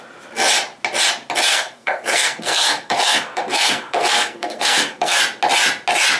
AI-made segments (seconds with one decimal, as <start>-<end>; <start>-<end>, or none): 1.5-5.2